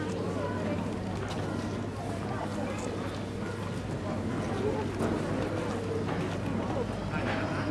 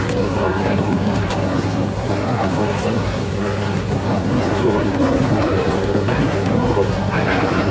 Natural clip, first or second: first